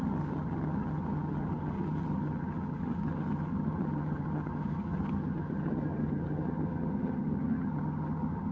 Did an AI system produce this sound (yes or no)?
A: yes